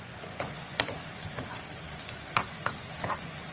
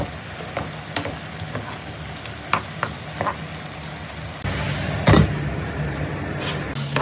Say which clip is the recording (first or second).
second